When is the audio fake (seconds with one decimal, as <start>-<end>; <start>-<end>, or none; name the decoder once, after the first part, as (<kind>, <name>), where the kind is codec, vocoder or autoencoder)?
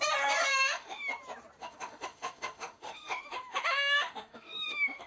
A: 0.5-1.1 (autoencoder, DAC-VAE); 1.6-5.1